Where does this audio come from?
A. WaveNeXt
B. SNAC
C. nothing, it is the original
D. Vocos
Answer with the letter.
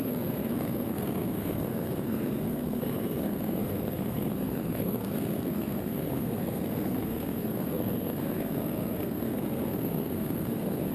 B